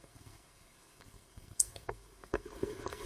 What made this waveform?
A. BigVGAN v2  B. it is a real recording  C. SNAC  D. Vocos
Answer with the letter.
C